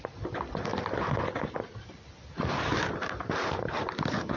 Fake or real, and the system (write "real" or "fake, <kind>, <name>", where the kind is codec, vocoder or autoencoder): real